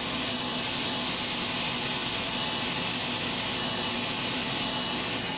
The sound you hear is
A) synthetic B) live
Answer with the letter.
B